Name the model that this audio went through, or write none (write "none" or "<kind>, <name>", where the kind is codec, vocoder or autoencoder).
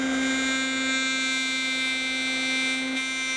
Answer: none